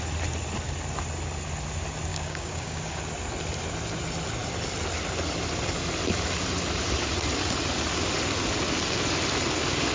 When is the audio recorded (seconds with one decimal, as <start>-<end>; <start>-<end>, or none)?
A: 0.0-2.1; 3.0-9.9